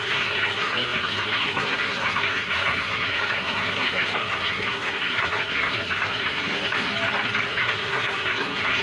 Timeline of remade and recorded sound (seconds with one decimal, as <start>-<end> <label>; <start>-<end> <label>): 0.0-6.9 remade; 6.9-7.5 recorded; 7.5-8.8 remade